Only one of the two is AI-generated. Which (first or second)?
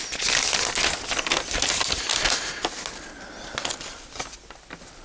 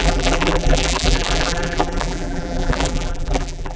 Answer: second